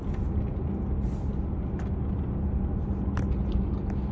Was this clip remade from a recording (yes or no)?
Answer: no